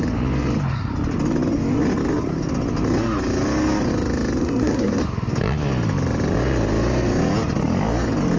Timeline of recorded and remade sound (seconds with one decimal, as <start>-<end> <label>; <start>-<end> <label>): 0.0-4.4 recorded; 4.4-5.0 remade; 5.0-8.4 recorded